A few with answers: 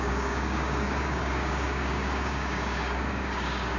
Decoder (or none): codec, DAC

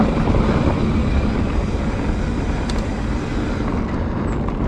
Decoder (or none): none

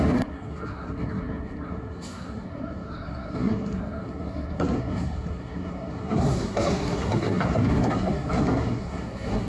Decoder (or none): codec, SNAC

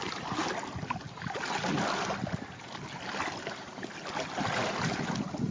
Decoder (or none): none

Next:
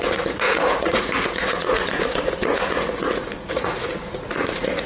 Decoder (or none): vocoder, Vocos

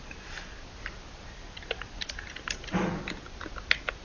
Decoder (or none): none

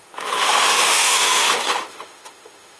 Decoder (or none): autoencoder, DAC-VAE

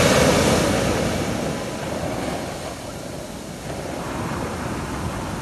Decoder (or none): none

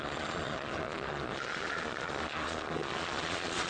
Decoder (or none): vocoder, Vocos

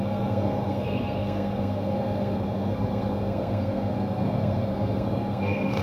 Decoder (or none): codec, SNAC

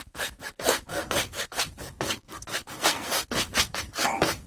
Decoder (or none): codec, SNAC